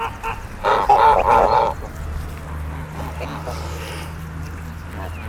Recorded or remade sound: recorded